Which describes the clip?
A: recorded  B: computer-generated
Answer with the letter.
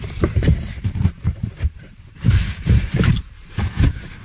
B